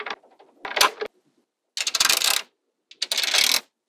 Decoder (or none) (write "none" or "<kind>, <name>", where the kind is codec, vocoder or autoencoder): none